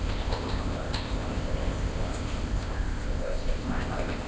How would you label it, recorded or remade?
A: remade